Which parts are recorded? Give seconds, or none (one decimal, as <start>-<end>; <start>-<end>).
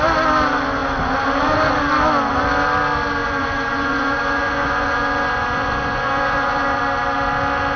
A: 0.0-3.2; 6.8-7.8